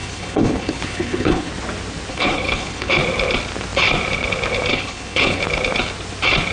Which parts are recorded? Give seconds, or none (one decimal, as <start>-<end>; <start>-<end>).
1.5-2.1; 2.9-4.7; 5.4-6.5